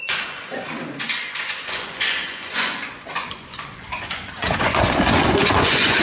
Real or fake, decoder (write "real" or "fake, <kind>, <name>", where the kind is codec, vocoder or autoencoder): fake, vocoder, Vocos